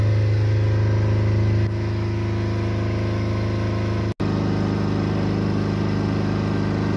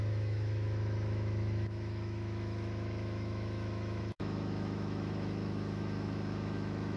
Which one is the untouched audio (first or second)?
first